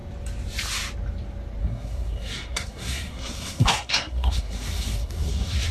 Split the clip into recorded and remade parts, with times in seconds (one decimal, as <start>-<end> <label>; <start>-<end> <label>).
0.0-1.6 recorded; 1.6-5.7 remade